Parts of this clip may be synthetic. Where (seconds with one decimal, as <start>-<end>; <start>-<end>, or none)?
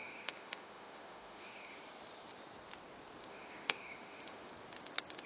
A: 0.0-1.8; 3.2-4.5